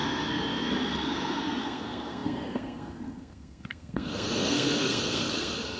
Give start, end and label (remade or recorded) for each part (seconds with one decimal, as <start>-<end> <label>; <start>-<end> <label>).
0.0-5.8 remade